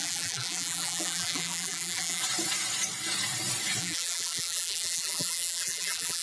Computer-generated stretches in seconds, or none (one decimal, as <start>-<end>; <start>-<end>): 0.0-2.2; 3.8-6.2